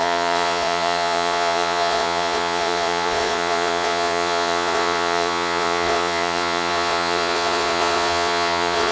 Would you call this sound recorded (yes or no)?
no